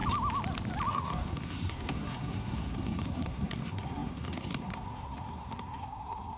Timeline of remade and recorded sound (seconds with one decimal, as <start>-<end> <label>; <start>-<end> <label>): 0.0-0.9 recorded; 0.9-6.4 remade